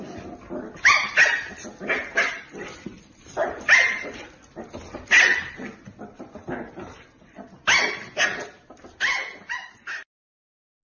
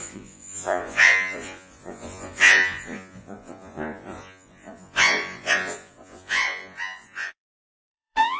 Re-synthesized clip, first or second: second